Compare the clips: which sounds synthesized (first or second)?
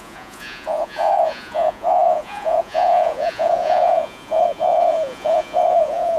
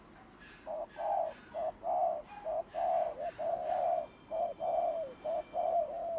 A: first